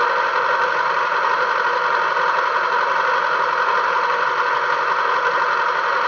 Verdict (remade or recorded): recorded